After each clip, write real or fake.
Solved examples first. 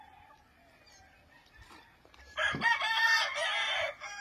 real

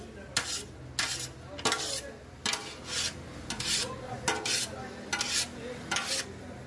real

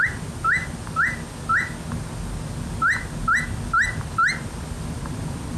real